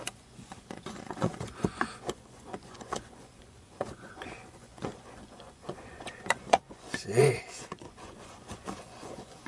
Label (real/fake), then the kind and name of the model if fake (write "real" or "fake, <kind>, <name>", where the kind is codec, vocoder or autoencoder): fake, vocoder, Vocos